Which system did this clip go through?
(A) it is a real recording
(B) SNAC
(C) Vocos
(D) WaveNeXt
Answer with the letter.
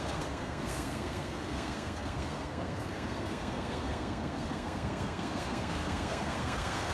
B